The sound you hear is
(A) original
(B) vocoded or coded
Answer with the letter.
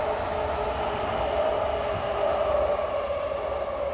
A